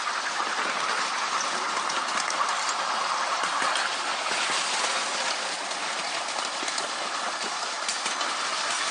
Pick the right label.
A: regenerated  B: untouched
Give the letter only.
B